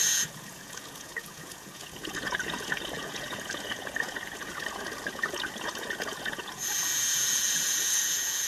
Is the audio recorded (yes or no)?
no